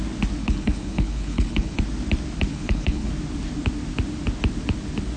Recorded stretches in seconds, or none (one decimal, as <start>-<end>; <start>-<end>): 0.0-0.4; 1.8-2.5; 3.1-5.2